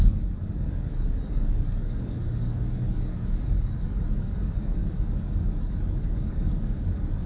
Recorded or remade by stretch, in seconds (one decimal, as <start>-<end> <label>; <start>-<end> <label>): 0.0-7.3 remade